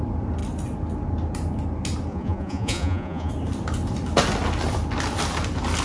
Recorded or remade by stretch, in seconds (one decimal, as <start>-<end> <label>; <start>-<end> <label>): 0.0-2.1 recorded; 2.1-3.3 remade; 3.3-5.8 recorded